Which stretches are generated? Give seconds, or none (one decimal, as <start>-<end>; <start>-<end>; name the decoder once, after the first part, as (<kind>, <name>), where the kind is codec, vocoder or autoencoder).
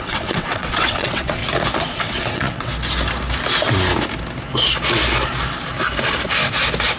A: 0.0-1.4 (vocoder, WaveNeXt); 2.0-2.7